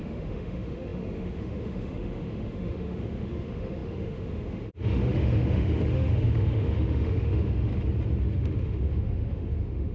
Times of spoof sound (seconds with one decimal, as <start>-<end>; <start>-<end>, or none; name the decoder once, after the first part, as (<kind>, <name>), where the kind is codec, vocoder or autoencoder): 0.0-7.7 (autoencoder, DAC-VAE); 8.2-9.9